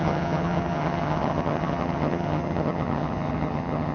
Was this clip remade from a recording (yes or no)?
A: yes